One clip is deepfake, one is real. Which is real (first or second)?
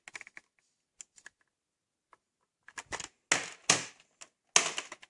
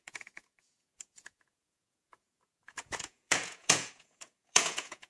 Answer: first